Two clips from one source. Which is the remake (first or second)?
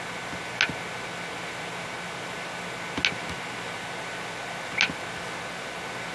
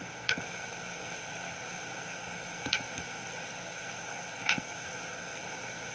second